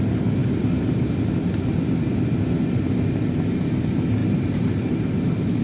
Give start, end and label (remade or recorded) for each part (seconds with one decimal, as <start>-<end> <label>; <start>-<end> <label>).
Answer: 0.0-4.2 recorded; 4.2-5.0 remade; 5.0-5.6 recorded